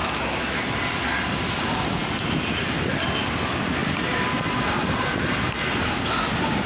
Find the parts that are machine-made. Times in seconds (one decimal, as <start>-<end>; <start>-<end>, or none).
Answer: 0.0-0.6